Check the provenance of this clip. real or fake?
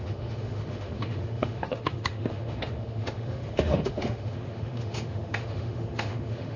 fake